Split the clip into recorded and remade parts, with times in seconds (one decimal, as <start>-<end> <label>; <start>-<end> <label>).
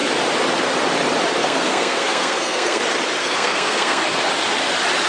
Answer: 0.0-1.4 recorded; 1.4-2.8 remade; 2.8-3.2 recorded; 3.2-4.0 remade; 4.0-5.1 recorded